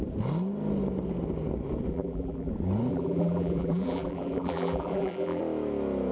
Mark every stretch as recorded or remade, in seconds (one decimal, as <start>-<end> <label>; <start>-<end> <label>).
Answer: 0.0-1.9 recorded; 1.9-2.5 remade; 2.5-2.9 recorded; 2.9-5.4 remade; 5.4-6.1 recorded